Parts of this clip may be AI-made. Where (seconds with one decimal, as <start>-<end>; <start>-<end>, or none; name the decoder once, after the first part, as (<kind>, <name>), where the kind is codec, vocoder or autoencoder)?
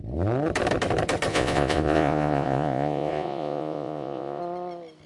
1.3-4.4 (vocoder, Vocos)